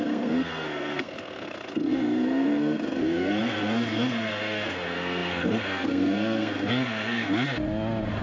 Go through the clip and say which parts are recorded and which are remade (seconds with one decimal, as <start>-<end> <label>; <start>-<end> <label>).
0.0-7.3 remade; 7.3-8.2 recorded